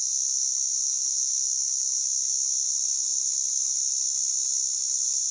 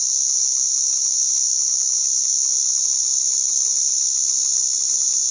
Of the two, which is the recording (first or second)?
first